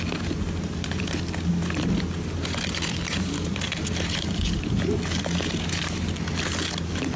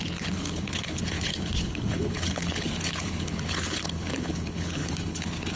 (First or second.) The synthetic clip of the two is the second